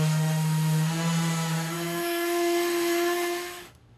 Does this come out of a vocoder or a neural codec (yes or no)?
yes